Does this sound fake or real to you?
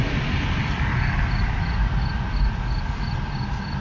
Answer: real